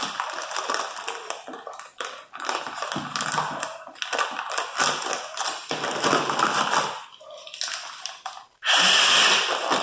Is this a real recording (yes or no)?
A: yes